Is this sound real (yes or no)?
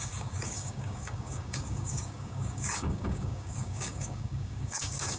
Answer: no